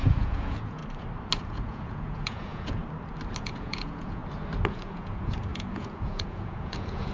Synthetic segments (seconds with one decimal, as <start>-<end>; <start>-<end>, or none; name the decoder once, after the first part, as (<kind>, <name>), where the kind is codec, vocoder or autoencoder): 0.0-0.8 (vocoder, Vocos); 1.4-2.8; 3.4-4.2; 4.7-7.1

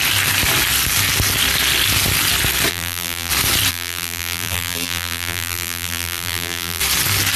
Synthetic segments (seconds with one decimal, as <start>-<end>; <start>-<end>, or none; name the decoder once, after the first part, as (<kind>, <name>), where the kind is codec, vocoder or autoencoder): 2.7-3.3 (vocoder, BigVGAN v2); 3.7-6.8

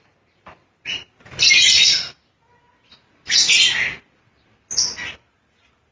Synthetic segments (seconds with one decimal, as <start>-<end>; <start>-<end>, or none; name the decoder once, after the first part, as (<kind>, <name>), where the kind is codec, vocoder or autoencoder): 0.0-1.8 (vocoder, BigVGAN v2); 5.3-5.9

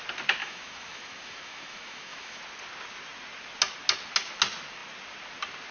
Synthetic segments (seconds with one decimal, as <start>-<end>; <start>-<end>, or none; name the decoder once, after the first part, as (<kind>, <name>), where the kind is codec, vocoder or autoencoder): 0.4-2.4 (autoencoder, DAC-VAE)